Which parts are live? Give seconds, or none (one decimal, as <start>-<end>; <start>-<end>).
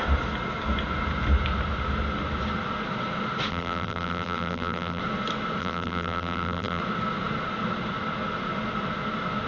0.0-3.5; 5.0-5.6; 6.8-9.5